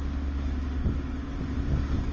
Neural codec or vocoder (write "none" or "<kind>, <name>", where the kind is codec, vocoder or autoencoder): none